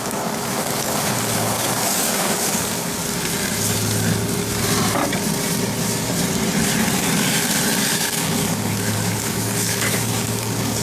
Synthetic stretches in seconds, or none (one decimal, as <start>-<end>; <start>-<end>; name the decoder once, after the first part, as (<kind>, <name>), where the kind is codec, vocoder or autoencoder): 0.0-3.0 (codec, DAC); 7.9-10.8